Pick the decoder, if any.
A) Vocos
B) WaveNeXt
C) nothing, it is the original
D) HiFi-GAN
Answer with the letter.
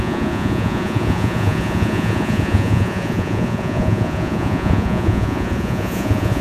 A